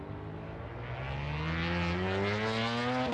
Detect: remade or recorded recorded